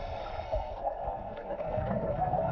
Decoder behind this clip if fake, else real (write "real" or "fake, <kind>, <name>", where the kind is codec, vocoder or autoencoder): fake, codec, SNAC